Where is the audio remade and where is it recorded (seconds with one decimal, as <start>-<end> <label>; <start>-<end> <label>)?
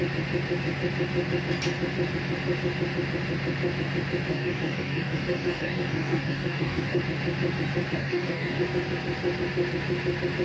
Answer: 0.0-4.3 recorded; 4.3-7.0 remade; 7.0-8.0 recorded; 8.0-8.6 remade; 8.6-10.4 recorded